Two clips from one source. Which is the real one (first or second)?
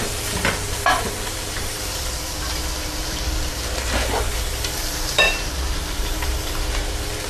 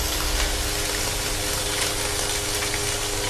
second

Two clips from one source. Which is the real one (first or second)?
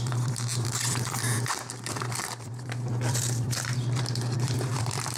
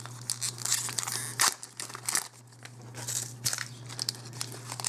second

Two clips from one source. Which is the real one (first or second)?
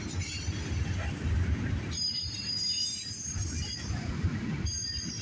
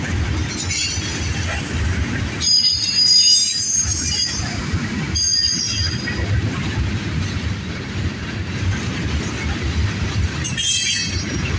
second